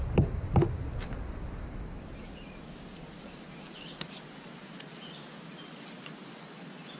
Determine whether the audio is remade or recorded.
recorded